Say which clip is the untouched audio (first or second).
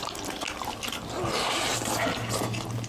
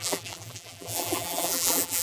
first